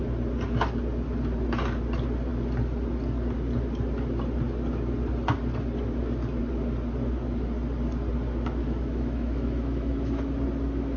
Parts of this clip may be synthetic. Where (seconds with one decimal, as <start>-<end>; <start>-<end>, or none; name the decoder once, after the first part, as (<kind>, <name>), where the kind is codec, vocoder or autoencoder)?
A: 8.6-10.2 (autoencoder, DAC-VAE)